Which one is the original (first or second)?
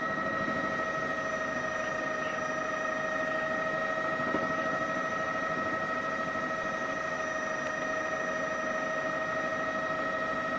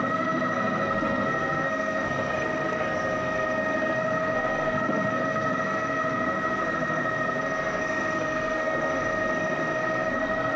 first